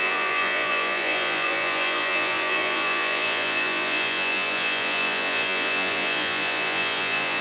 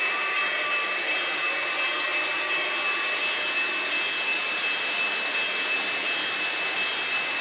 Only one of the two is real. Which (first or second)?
second